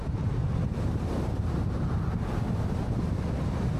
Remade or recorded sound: recorded